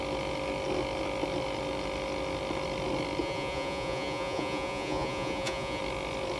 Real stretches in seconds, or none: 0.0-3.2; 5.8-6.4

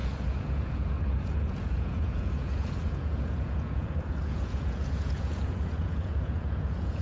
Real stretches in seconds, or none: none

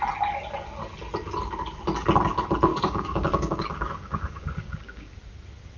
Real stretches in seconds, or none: 0.0-2.7; 5.1-5.8